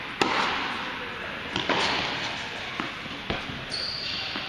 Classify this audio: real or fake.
real